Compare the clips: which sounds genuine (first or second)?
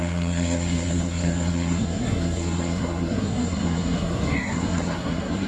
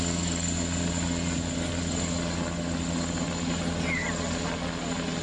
second